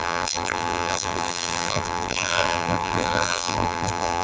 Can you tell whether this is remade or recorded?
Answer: remade